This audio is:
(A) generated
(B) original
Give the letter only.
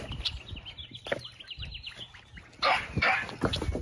B